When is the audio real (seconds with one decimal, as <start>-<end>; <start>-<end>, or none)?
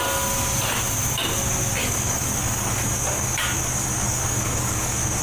0.0-1.8